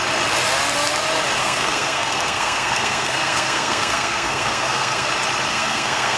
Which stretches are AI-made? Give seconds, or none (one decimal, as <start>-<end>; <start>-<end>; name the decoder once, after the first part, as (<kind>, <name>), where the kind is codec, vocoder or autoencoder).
1.4-5.1 (codec, SNAC); 5.5-6.2